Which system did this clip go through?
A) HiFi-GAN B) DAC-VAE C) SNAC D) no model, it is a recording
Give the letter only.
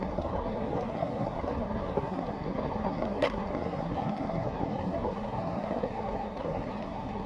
C